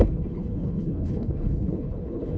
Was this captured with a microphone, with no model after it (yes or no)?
no